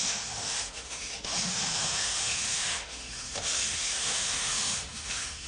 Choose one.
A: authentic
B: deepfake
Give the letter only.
B